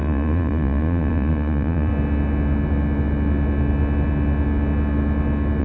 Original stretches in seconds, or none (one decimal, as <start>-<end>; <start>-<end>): 1.9-5.6